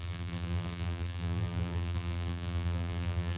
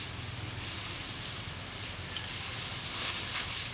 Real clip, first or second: second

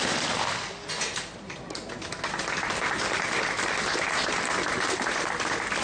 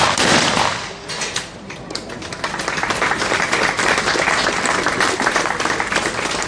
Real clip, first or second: first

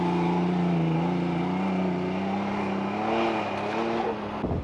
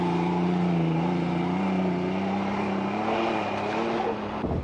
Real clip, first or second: first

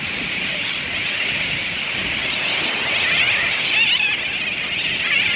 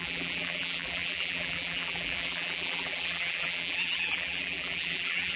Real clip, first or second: first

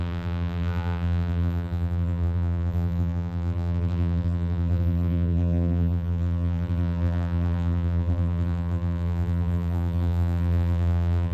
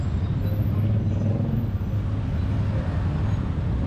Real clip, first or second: second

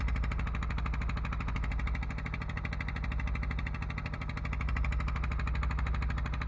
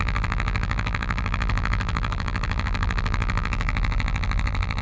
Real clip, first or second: first